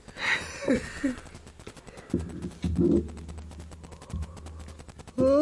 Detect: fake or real real